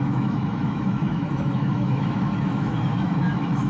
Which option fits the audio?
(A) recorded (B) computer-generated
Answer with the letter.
B